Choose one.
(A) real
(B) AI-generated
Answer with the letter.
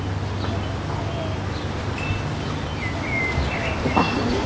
A